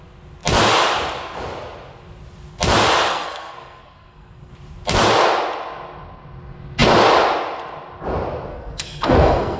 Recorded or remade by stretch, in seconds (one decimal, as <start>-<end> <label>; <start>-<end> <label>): 0.0-3.1 recorded; 3.1-4.5 remade; 4.5-8.5 recorded; 8.5-9.6 remade